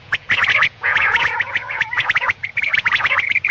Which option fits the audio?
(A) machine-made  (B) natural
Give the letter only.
A